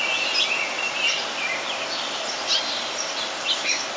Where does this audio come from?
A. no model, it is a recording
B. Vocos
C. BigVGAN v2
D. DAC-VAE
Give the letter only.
A